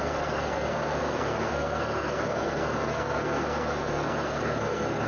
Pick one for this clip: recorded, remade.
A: remade